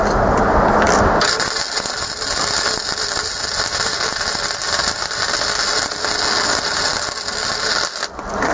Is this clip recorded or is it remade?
recorded